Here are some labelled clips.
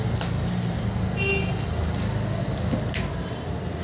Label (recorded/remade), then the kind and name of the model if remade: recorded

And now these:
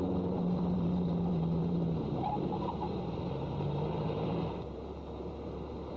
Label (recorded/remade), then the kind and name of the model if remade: remade, vocoder, BigVGAN v2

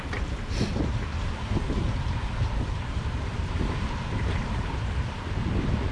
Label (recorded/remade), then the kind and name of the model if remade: remade, vocoder, BigVGAN v2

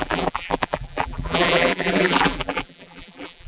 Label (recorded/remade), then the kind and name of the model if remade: remade, vocoder, BigVGAN v2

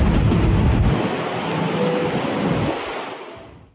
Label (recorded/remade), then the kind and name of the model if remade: recorded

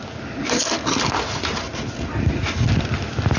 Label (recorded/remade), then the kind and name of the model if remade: recorded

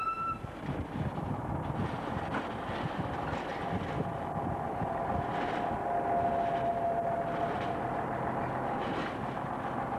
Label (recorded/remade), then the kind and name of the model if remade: recorded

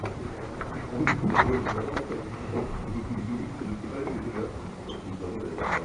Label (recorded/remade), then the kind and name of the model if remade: remade, vocoder, BigVGAN v2